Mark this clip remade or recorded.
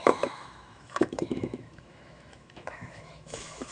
remade